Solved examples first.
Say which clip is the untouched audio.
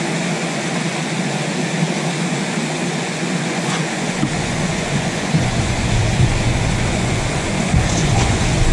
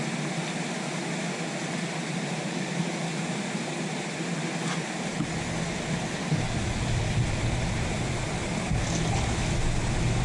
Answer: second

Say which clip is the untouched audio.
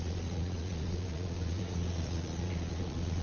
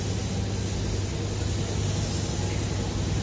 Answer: second